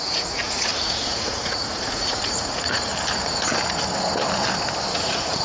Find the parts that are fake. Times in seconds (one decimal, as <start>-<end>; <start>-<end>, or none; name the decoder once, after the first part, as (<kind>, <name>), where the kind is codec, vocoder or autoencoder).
0.0-2.9 (vocoder, Vocos); 4.9-5.4